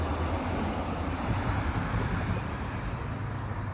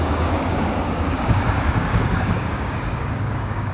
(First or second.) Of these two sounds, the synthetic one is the second